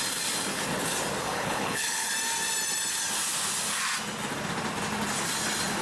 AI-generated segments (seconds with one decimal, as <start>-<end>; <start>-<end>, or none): 1.2-2.1